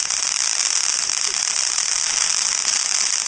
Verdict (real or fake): real